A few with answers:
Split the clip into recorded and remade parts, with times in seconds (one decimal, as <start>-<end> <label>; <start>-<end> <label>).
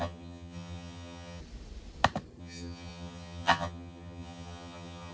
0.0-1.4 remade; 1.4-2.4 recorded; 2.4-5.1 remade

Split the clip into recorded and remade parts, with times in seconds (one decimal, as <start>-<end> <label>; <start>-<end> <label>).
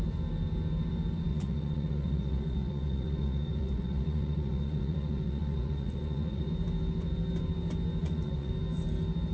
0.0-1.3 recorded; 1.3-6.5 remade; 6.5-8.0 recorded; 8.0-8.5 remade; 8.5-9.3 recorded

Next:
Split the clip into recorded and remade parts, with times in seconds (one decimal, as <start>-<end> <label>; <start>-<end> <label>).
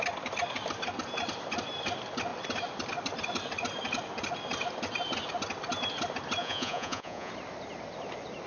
0.0-6.4 recorded; 6.4-7.3 remade; 7.3-8.5 recorded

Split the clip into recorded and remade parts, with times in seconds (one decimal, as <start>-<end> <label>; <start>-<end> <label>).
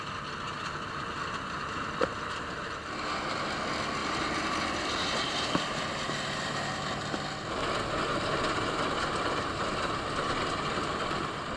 0.0-4.0 recorded; 4.0-5.8 remade; 5.8-11.6 recorded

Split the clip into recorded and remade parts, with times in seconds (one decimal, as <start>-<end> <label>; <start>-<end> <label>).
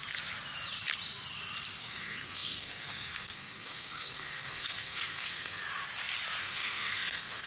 0.0-1.8 recorded; 1.8-5.6 remade; 5.6-6.4 recorded; 6.4-7.5 remade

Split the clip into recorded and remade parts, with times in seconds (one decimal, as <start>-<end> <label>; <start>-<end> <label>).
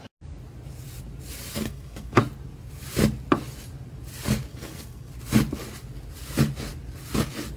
0.0-1.5 recorded; 1.5-2.2 remade; 2.2-4.5 recorded; 4.5-5.1 remade; 5.1-7.6 recorded